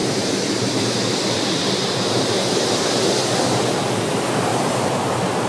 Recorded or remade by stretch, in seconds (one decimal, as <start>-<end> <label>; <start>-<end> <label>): 0.0-3.3 remade; 3.3-4.5 recorded; 4.5-5.5 remade